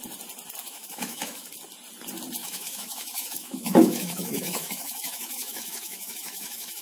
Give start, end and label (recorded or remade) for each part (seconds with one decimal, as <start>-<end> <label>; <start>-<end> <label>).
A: 0.0-0.6 recorded; 0.6-1.5 remade; 1.5-2.4 recorded; 2.4-6.8 remade